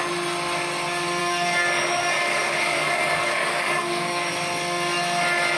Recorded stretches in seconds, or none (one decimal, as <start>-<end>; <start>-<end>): 0.0-1.2; 4.3-5.6